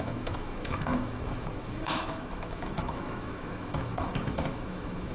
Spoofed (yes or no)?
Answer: yes